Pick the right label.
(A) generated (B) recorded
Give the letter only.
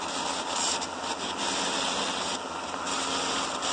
B